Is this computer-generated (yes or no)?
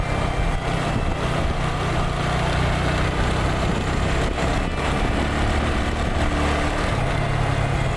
no